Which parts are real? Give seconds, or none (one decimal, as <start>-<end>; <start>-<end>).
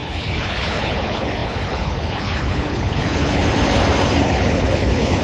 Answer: 3.4-4.2